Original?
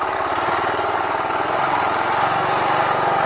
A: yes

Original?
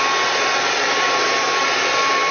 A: yes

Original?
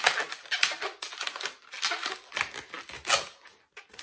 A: yes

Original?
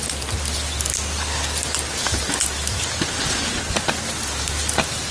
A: yes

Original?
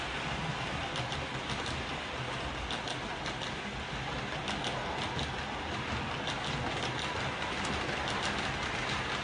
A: yes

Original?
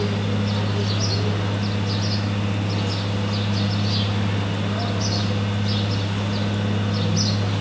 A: yes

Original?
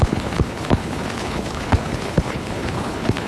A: no